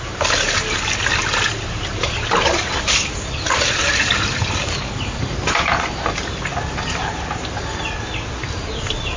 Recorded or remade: recorded